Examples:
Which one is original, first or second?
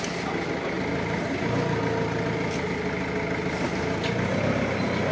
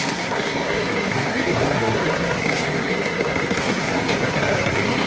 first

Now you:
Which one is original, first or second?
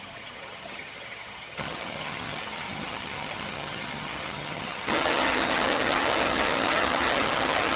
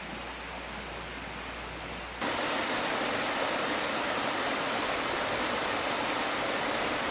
second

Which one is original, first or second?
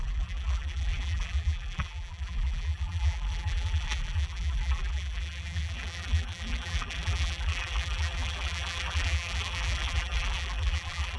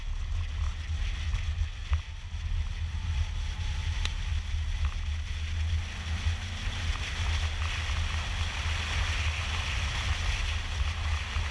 second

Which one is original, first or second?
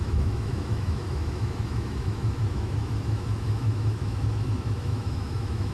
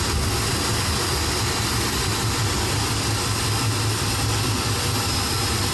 second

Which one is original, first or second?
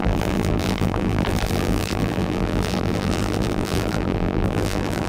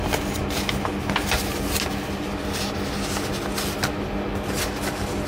second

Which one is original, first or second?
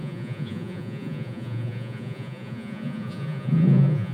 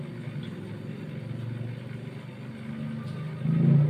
second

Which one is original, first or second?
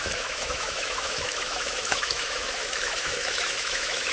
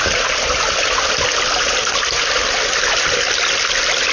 second